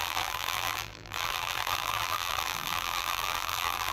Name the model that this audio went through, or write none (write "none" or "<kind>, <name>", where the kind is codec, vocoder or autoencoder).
vocoder, BigVGAN v2